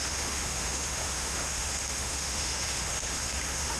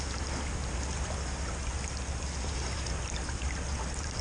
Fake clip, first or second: first